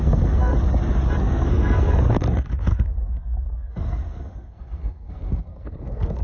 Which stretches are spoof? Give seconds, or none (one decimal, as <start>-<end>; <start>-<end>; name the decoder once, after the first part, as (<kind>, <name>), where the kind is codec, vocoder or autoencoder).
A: 0.0-0.5 (codec, SNAC); 1.2-6.2